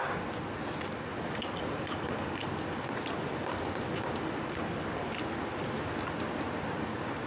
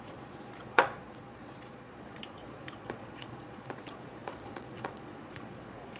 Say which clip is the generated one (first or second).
second